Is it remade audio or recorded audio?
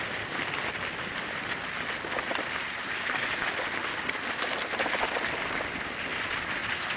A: recorded